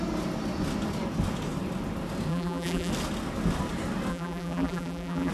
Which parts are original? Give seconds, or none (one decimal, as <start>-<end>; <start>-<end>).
0.0-2.3; 2.9-4.1